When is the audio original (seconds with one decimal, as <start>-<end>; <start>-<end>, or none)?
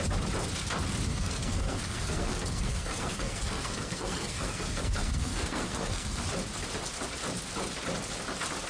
0.0-1.1; 6.2-8.7